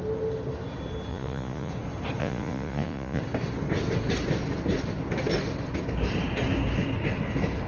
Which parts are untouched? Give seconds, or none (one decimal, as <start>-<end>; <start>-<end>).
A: 0.0-1.1; 1.7-2.2; 3.2-7.7